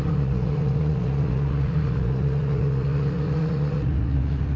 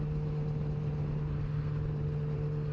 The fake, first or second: first